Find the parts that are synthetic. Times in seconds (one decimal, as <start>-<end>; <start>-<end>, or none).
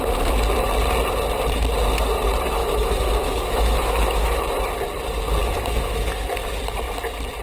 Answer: 2.6-4.4; 5.4-6.6